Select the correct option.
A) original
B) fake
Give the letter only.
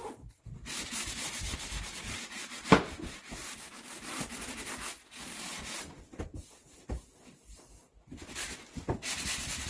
A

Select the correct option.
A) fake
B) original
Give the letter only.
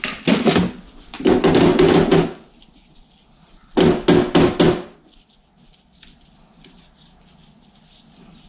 B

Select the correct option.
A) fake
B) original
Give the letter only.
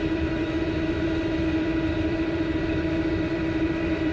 A